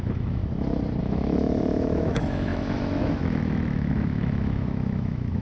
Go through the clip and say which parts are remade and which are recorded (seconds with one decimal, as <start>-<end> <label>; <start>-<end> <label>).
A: 0.0-0.4 remade; 0.4-1.0 recorded; 1.0-5.4 remade